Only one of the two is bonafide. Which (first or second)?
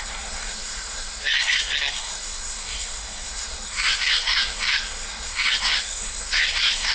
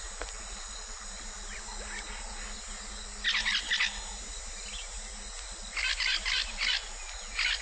second